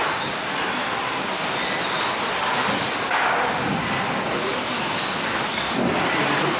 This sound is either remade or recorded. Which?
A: recorded